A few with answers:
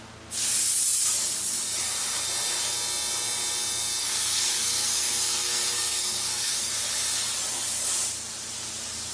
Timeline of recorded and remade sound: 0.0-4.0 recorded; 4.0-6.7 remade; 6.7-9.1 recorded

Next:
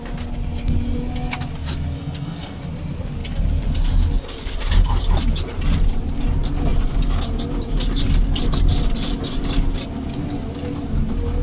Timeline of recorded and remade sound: 0.0-2.0 recorded; 2.0-2.6 remade; 2.6-11.4 recorded

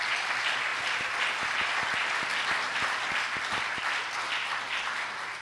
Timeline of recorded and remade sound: 0.0-5.4 recorded

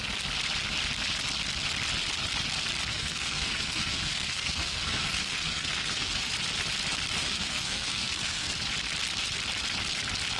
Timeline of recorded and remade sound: 0.0-2.9 recorded; 2.9-6.3 remade; 6.3-7.2 recorded; 7.2-8.5 remade; 8.5-10.4 recorded

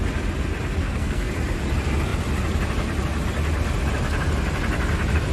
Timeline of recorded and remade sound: 0.0-0.8 recorded; 0.8-1.3 remade; 1.3-5.3 recorded

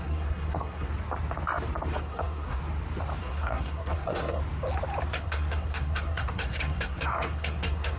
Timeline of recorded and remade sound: 0.0-0.9 remade; 0.9-2.0 recorded; 2.0-2.6 remade; 2.6-3.2 recorded; 3.2-4.4 remade; 4.4-5.2 recorded; 5.2-8.0 remade

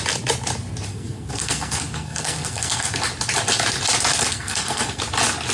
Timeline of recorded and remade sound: 0.0-0.9 recorded; 0.9-3.0 remade; 3.0-4.3 recorded; 4.3-5.0 remade; 5.0-5.5 recorded